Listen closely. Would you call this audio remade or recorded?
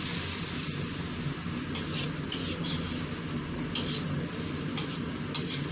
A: recorded